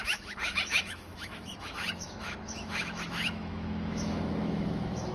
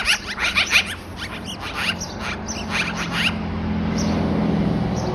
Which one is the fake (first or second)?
first